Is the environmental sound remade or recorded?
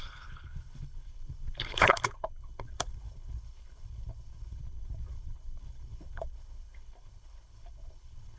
remade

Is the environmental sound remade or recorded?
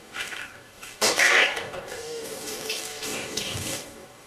remade